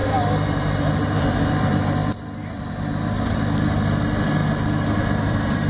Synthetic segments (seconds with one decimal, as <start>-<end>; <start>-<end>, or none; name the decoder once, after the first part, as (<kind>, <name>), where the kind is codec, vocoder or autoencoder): 1.2-4.4 (vocoder, BigVGAN v2); 5.0-5.7